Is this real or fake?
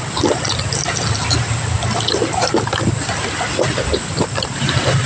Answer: real